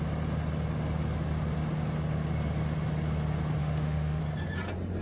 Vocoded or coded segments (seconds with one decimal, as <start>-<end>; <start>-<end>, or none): 3.6-4.2